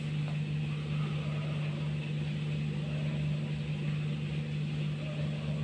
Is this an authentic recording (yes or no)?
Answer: yes